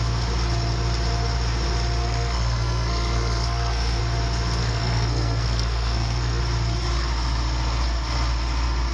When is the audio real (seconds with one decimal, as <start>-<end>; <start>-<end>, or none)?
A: 0.0-2.0; 4.0-4.6; 6.4-8.9

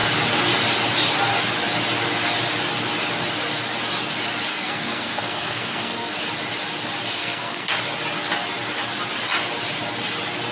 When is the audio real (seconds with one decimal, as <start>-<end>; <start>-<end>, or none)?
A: 0.0-4.5; 6.2-7.2; 7.8-10.5

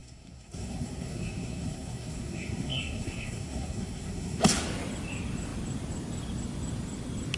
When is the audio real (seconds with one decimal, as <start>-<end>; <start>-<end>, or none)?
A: 4.4-7.4

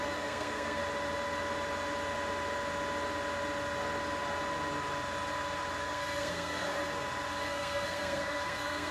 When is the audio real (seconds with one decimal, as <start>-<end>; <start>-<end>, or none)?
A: 0.8-5.8; 6.8-7.5

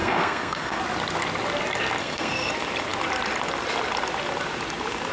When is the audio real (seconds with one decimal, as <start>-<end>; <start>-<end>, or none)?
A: 0.8-2.0; 2.5-5.1